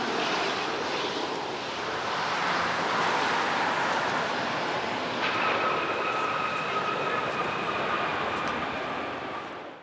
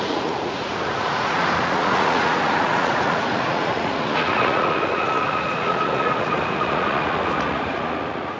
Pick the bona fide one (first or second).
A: first